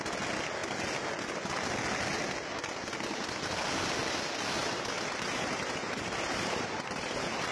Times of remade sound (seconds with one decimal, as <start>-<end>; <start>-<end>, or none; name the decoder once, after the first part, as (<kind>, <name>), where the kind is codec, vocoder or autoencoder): 4.6-7.5 (vocoder, BigVGAN v2)